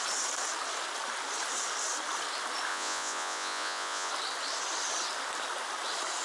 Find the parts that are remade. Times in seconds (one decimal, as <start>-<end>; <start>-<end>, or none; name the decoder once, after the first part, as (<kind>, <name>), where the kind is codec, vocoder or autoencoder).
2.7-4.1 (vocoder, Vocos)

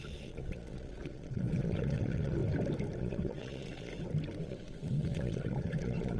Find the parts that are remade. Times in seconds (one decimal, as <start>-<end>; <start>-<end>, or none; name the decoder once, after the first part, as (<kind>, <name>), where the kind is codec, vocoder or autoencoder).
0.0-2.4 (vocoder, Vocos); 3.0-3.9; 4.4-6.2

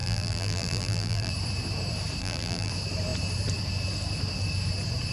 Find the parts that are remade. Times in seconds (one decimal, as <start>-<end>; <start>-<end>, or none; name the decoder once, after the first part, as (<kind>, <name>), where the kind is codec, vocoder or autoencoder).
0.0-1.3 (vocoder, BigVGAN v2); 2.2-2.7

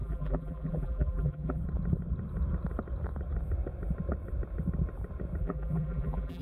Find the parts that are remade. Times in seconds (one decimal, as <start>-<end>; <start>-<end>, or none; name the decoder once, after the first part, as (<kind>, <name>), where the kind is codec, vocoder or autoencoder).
0.0-1.6 (vocoder, BigVGAN v2); 5.4-6.4